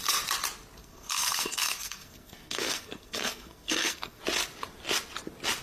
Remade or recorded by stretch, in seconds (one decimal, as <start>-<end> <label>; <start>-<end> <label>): 0.0-0.8 recorded; 0.8-4.2 remade; 4.2-5.6 recorded